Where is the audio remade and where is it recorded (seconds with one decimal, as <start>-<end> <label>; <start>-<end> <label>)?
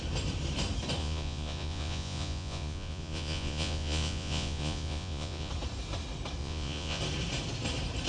0.0-1.0 recorded; 1.0-5.5 remade; 5.5-6.4 recorded; 6.4-7.0 remade; 7.0-8.1 recorded